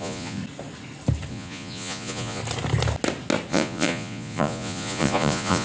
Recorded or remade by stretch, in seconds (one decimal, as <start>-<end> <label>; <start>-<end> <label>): 0.0-0.4 remade; 0.4-1.3 recorded; 1.3-2.4 remade; 2.4-3.5 recorded; 3.5-5.6 remade